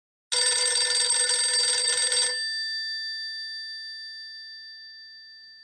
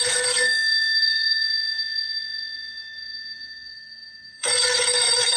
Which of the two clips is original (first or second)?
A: first